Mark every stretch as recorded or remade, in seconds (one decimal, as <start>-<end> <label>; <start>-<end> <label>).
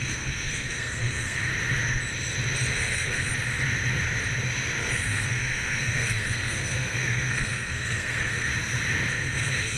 0.0-1.5 remade; 1.5-2.7 recorded; 2.7-3.3 remade; 3.3-4.8 recorded; 4.8-8.5 remade; 8.5-9.1 recorded; 9.1-9.8 remade